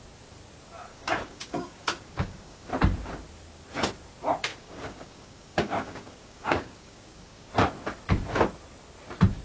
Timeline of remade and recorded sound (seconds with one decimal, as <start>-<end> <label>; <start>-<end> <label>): 0.0-0.9 recorded; 0.9-2.7 remade; 2.7-4.5 recorded; 4.5-7.5 remade; 7.5-9.4 recorded

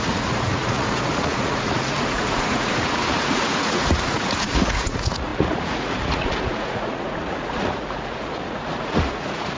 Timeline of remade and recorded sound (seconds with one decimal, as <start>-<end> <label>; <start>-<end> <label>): 0.0-9.6 remade

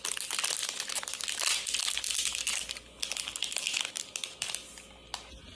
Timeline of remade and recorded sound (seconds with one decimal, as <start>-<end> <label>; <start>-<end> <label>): 0.0-5.5 recorded

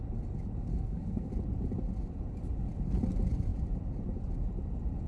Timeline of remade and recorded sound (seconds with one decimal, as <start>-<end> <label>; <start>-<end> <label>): 0.0-0.7 recorded; 0.7-1.3 remade; 1.3-5.1 recorded

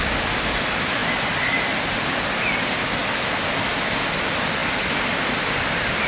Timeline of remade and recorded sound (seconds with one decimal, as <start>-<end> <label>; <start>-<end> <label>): 0.0-1.0 remade; 1.0-2.6 recorded; 2.6-6.1 remade

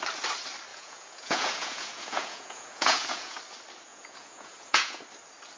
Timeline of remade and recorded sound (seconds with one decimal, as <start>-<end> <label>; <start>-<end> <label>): 0.0-0.7 recorded; 0.7-3.4 remade; 3.4-3.9 recorded; 3.9-5.0 remade; 5.0-5.6 recorded